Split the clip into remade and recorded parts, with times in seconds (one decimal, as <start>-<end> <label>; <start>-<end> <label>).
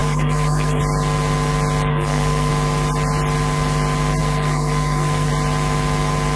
0.0-0.8 remade; 0.8-1.9 recorded; 1.9-2.5 remade; 2.5-4.2 recorded; 4.2-5.3 remade; 5.3-6.4 recorded